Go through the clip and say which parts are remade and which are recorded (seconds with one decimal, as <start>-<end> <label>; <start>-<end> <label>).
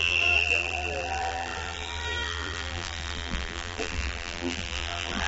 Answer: 0.0-5.3 remade